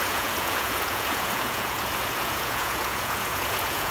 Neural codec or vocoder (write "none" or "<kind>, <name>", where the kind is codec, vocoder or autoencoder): vocoder, Vocos